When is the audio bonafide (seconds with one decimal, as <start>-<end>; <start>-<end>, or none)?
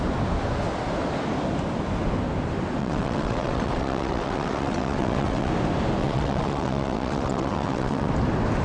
0.0-2.8; 5.5-6.0; 8.1-8.6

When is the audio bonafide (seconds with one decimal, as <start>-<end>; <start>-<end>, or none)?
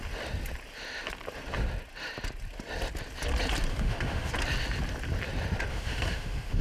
0.0-3.7; 4.3-5.7